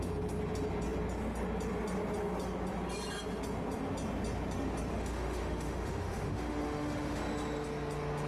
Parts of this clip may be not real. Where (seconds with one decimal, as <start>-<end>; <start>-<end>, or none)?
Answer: 4.9-7.2